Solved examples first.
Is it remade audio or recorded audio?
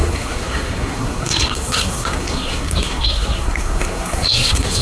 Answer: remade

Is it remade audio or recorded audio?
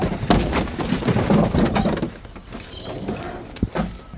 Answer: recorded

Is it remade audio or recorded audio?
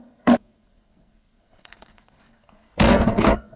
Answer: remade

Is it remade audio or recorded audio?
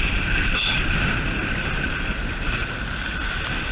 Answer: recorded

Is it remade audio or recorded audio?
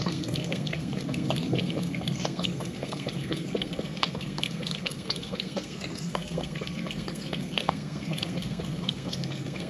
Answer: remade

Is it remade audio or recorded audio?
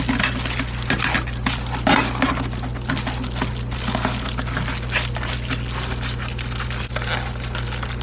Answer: recorded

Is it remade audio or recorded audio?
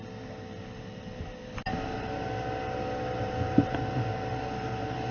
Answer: recorded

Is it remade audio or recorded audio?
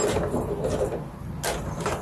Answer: recorded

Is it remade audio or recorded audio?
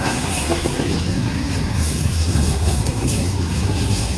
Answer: remade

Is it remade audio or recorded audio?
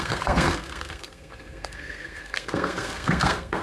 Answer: remade